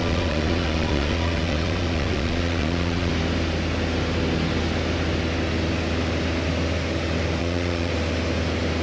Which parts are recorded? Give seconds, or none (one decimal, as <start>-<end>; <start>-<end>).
3.1-7.4; 7.9-8.8